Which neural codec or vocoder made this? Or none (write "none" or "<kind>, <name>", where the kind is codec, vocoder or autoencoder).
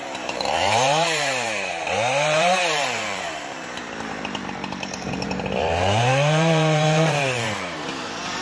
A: vocoder, BigVGAN v2